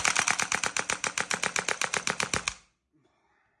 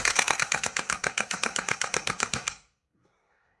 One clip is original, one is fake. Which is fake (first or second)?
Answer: second